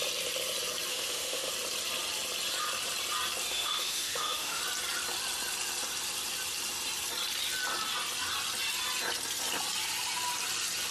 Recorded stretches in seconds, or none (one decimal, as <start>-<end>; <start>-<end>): 0.0-0.9; 1.5-3.5; 4.6-10.9